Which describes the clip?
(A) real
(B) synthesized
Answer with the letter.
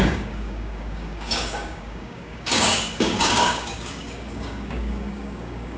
B